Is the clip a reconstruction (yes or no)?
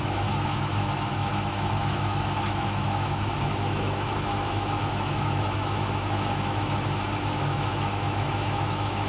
yes